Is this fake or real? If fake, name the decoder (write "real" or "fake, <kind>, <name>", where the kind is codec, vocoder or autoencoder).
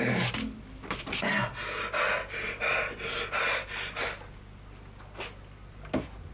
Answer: real